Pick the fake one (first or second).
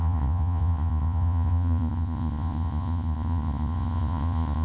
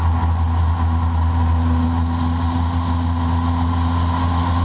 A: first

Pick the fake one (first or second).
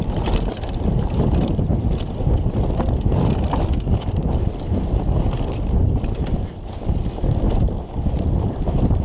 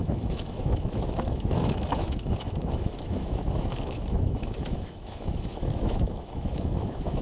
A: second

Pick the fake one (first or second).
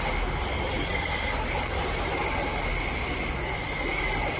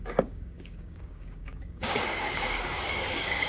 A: second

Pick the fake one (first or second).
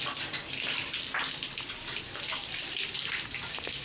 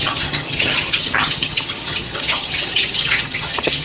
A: second